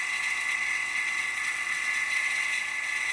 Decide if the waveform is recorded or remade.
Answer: remade